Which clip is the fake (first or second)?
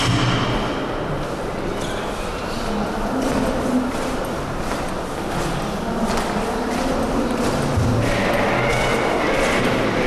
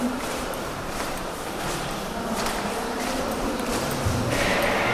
second